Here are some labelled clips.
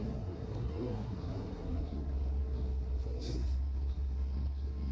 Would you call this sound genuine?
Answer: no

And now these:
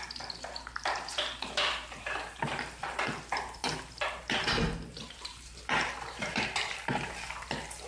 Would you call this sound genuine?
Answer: no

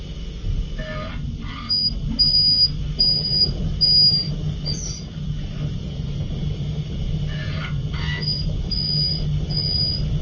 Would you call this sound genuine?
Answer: yes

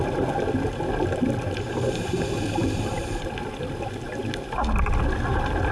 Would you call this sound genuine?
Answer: yes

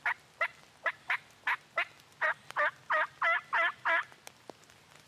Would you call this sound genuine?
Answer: yes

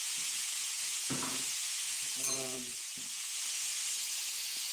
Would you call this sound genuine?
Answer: no